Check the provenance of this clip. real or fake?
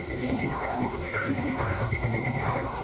fake